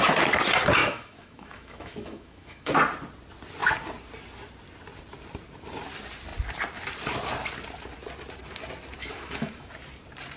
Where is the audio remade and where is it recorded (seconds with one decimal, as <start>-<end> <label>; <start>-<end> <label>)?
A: 0.0-0.8 recorded; 0.8-2.7 remade; 2.7-9.0 recorded; 9.0-9.7 remade; 9.7-10.4 recorded